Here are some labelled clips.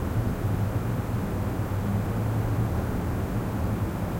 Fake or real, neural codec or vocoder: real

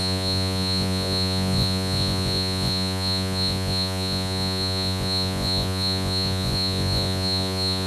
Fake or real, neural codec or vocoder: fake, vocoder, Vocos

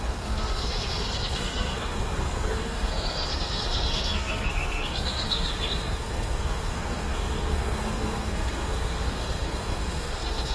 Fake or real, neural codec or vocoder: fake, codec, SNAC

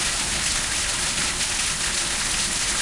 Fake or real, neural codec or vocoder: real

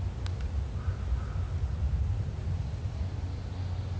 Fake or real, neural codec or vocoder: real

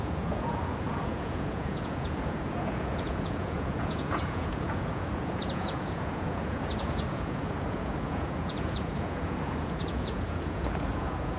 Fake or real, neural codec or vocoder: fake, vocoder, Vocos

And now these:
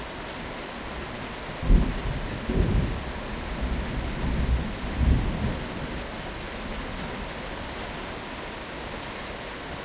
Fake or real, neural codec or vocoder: real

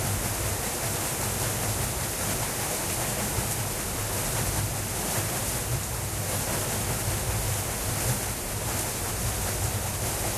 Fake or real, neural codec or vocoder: real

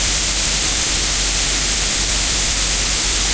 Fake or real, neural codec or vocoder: fake, vocoder, BigVGAN v2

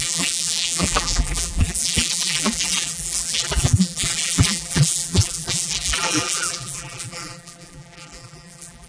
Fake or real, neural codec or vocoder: fake, vocoder, BigVGAN v2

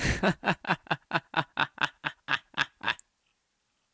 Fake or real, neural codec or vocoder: real